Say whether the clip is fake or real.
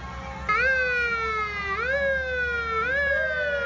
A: real